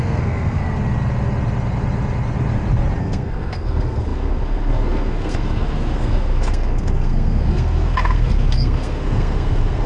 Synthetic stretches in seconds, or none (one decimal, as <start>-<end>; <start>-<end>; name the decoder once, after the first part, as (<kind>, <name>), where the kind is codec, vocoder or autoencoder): 0.0-0.6 (codec, SNAC); 3.0-9.9

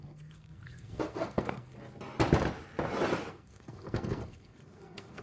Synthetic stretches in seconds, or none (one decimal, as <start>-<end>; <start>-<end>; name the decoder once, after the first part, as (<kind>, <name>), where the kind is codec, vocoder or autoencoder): 0.0-1.7 (codec, SNAC); 3.3-5.2

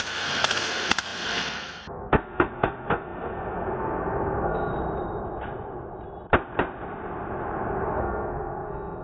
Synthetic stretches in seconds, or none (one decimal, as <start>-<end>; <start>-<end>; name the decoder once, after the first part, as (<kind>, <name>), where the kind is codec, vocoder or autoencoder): 0.0-4.7 (codec, SNAC); 8.0-9.0

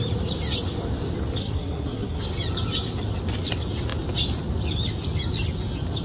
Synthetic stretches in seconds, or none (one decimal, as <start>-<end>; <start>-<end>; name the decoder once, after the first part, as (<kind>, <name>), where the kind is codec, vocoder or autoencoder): 1.4-2.2 (codec, SNAC)

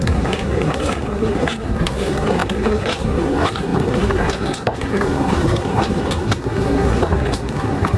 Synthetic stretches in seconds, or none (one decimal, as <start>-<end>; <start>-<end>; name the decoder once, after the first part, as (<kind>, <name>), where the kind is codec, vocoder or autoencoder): 0.0-8.0 (codec, SNAC)

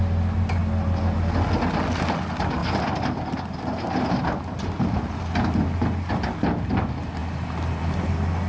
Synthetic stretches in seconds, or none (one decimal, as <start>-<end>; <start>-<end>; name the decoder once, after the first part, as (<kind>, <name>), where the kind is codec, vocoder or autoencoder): none

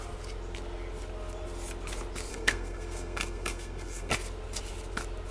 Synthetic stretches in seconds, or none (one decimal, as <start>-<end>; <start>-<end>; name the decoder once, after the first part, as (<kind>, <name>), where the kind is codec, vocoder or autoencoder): 2.3-4.1 (codec, SNAC)

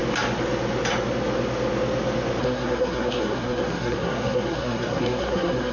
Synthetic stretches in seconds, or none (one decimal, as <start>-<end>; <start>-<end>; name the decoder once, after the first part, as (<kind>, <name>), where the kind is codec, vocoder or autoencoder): 2.4-5.7 (codec, SNAC)